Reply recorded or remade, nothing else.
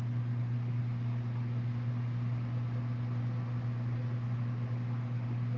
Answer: recorded